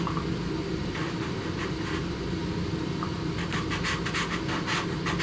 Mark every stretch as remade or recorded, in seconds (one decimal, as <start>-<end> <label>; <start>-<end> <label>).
0.0-0.6 recorded; 0.6-3.7 remade; 3.7-5.2 recorded

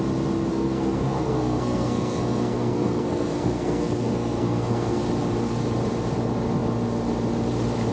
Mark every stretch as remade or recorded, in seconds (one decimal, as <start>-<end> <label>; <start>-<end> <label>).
0.0-0.5 recorded; 0.5-5.1 remade; 5.1-7.9 recorded

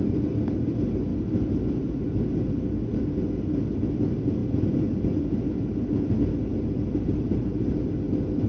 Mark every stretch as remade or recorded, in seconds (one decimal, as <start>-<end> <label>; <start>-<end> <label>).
0.0-8.5 recorded

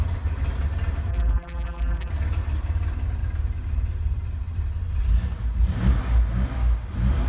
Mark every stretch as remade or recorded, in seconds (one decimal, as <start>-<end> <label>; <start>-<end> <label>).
0.0-1.1 recorded; 1.1-2.1 remade; 2.1-7.3 recorded

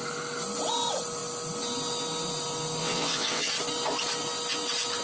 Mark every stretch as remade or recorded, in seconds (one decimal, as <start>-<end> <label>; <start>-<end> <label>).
0.0-2.8 recorded; 2.8-3.5 remade; 3.5-5.0 recorded